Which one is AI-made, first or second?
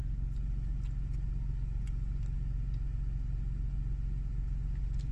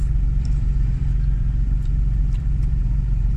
second